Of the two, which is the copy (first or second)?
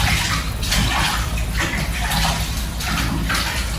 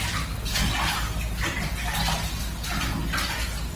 first